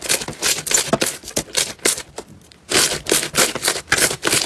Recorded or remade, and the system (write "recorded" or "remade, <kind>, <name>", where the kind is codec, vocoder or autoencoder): recorded